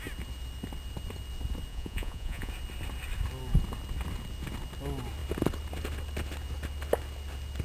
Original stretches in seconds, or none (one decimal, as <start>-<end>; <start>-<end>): 0.0-1.7; 2.5-7.6